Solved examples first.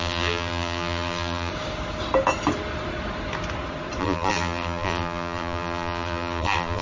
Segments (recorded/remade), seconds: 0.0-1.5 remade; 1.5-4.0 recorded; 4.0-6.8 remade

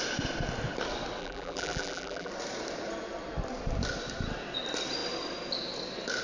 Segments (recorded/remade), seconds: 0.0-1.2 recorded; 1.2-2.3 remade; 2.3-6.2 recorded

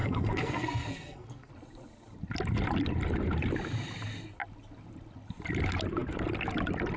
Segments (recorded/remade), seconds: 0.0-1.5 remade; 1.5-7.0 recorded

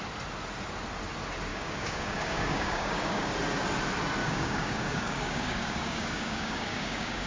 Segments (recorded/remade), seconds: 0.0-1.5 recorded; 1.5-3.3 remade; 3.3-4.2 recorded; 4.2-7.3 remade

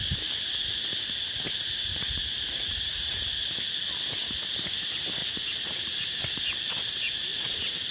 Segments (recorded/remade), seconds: 0.0-1.9 recorded; 1.9-3.2 remade; 3.2-5.2 recorded; 5.2-6.2 remade; 6.2-7.3 recorded; 7.3-7.9 remade

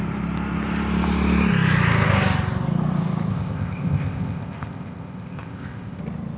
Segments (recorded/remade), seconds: 0.0-3.3 recorded; 3.3-6.0 remade; 6.0-6.4 recorded

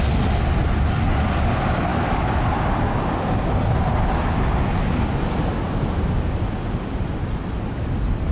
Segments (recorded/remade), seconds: 0.0-1.9 recorded; 1.9-2.4 remade; 2.4-8.3 recorded